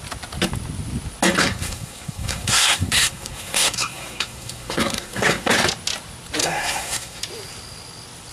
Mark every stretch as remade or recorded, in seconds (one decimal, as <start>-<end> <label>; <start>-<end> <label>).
0.0-1.4 recorded; 1.4-5.5 remade; 5.5-6.4 recorded; 6.4-7.2 remade; 7.2-8.3 recorded